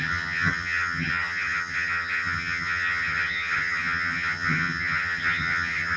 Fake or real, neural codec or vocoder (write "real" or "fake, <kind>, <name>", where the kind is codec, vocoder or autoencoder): fake, vocoder, HiFi-GAN